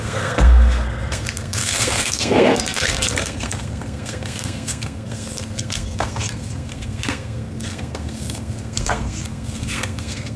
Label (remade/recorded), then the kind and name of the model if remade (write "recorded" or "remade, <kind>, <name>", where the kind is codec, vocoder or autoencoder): remade, codec, SNAC